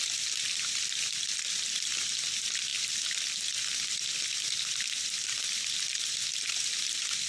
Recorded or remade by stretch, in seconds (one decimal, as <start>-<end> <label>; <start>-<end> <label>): 0.0-7.3 recorded